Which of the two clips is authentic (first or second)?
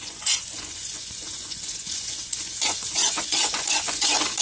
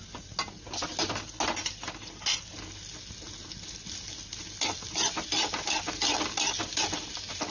second